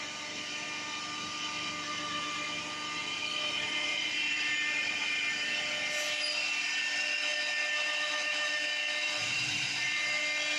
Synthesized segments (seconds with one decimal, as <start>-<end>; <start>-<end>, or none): 3.0-5.0; 9.2-10.2